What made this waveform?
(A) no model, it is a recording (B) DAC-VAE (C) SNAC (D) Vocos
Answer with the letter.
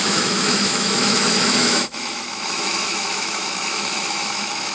B